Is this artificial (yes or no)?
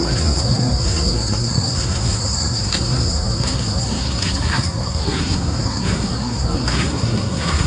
yes